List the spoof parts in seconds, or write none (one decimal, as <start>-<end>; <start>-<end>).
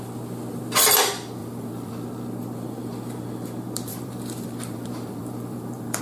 1.4-1.9; 3.9-6.0